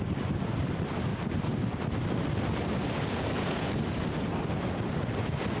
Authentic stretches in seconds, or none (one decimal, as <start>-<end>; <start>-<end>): 0.0-5.6

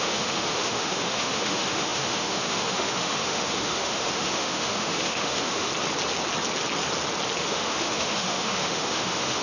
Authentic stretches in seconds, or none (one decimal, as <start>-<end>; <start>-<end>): 5.7-7.4

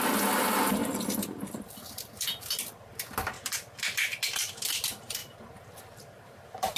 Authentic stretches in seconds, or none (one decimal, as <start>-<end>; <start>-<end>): 0.0-0.8; 4.5-5.2

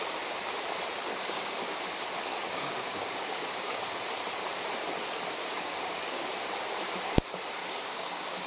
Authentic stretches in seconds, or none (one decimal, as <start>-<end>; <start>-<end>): 0.0-1.1; 1.8-2.3; 3.8-5.4; 6.3-7.6

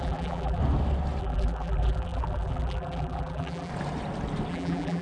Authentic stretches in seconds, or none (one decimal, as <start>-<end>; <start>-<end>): 0.6-1.2; 3.7-4.5